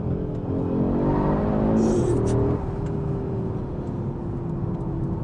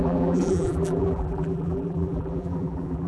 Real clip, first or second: first